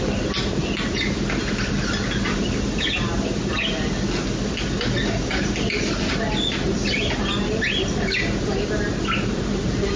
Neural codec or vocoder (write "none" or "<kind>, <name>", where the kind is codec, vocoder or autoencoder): none